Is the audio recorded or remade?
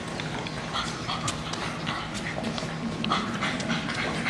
recorded